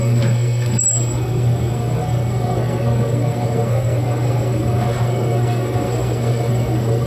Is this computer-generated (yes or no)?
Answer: yes